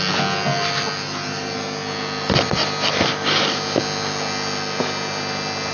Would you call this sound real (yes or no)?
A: yes